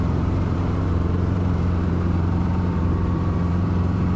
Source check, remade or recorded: remade